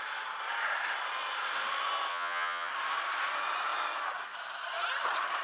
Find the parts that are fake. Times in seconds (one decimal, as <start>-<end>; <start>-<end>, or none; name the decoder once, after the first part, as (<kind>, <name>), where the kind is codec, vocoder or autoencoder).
2.1-2.7 (vocoder, HiFi-GAN)